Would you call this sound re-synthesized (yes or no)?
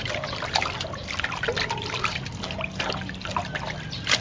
no